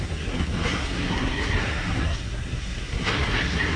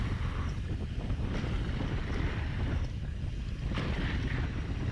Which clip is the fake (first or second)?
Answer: first